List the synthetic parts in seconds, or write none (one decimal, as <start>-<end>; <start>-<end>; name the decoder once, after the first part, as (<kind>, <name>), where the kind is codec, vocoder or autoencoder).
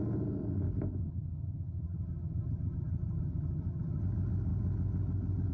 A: 1.0-4.0 (vocoder, HiFi-GAN)